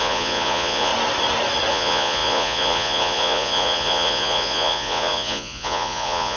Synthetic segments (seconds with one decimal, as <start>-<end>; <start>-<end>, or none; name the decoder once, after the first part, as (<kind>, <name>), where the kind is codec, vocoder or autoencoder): 0.0-0.9 (vocoder, Vocos); 1.7-6.4